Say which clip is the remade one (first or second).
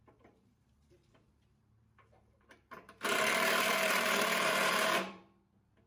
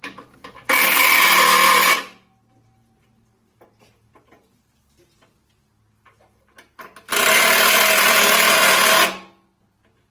first